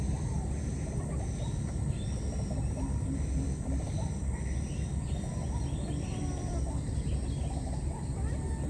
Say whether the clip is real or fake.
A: real